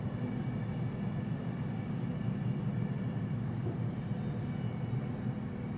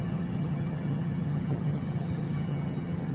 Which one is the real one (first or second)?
first